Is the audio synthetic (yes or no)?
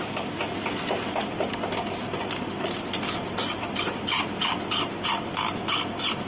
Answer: no